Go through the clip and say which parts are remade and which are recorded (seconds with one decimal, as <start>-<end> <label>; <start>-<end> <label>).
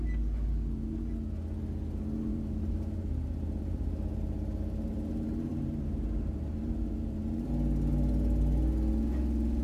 0.0-2.3 recorded; 2.3-7.5 remade; 7.5-9.6 recorded